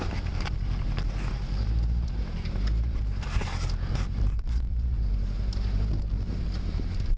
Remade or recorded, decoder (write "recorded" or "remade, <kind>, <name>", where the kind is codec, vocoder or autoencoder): remade, vocoder, BigVGAN v2